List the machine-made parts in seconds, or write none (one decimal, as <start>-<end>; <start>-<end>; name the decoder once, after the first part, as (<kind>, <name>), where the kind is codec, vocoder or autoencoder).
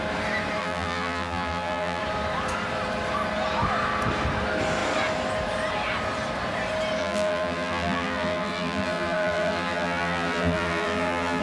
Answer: 0.6-2.0 (vocoder, BigVGAN v2); 7.0-11.4